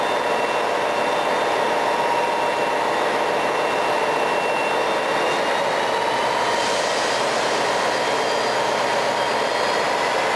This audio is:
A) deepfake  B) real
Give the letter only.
B